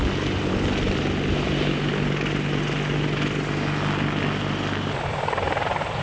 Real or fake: real